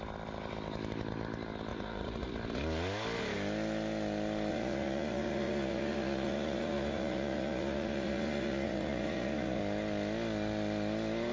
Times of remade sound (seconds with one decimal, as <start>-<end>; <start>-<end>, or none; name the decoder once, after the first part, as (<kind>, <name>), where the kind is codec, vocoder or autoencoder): 1.7-2.3 (vocoder, Vocos); 4.5-9.6